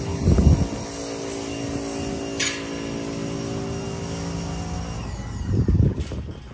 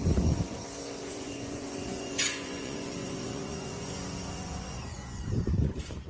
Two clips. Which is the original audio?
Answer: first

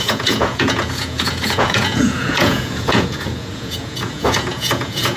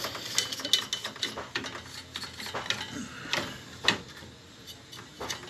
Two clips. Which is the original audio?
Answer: second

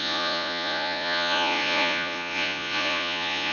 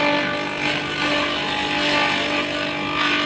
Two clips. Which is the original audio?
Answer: second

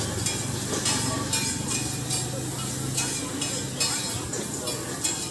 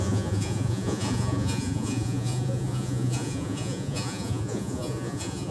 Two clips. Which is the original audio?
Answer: first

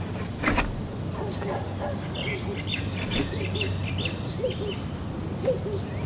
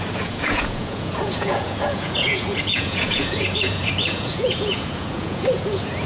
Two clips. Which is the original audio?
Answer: first